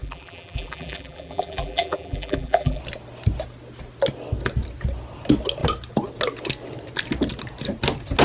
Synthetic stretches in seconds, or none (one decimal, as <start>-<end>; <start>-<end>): 0.0-2.8